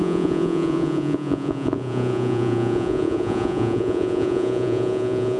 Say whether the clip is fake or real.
fake